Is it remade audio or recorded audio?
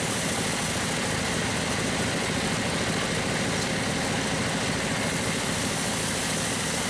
recorded